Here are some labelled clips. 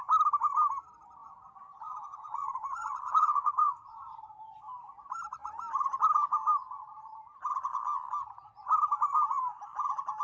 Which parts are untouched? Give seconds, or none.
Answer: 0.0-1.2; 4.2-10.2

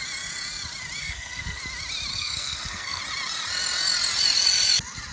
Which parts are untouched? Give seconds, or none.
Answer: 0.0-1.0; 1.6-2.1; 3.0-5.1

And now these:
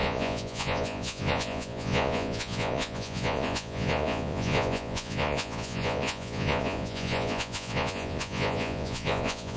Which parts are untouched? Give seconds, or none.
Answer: none

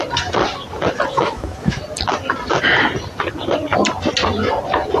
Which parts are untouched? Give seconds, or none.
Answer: 0.0-1.1; 1.8-5.0

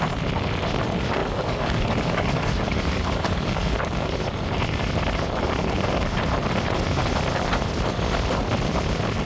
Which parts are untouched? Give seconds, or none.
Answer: 0.0-1.2; 4.3-9.3

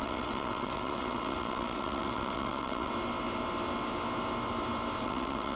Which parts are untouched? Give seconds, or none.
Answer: 2.9-5.0